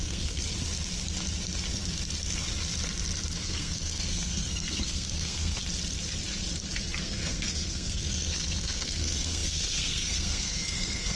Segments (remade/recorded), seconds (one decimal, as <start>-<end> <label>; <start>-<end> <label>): 0.0-0.4 remade; 0.4-3.4 recorded; 3.4-5.6 remade; 5.6-7.0 recorded; 7.0-11.2 remade